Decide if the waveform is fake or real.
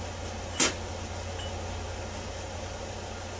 real